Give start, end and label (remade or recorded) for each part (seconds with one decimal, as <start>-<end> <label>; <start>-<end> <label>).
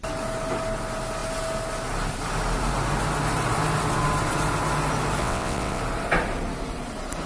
0.0-5.2 recorded; 5.2-5.8 remade; 5.8-7.3 recorded